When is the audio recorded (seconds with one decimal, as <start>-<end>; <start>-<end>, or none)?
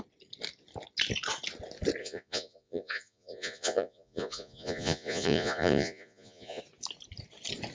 0.0-2.0; 6.6-7.7